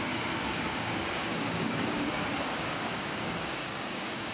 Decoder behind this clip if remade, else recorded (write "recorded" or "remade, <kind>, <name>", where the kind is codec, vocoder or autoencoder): remade, codec, DAC